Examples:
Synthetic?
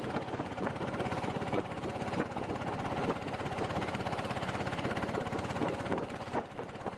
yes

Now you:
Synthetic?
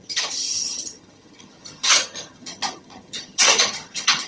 yes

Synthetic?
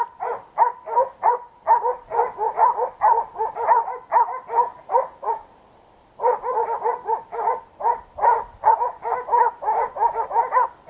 no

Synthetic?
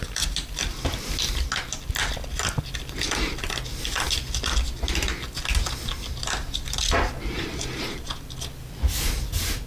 no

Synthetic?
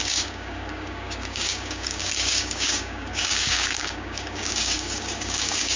yes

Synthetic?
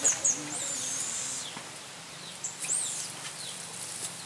yes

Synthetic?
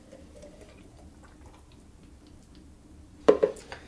no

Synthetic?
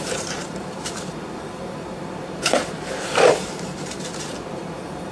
yes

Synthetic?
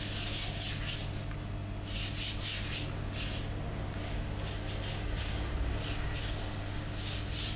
no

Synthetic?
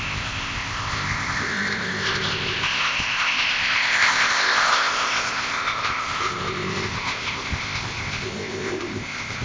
yes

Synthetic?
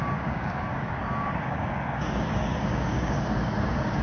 yes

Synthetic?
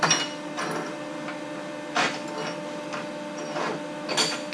no